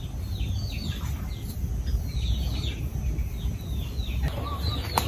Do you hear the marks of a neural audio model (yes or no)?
no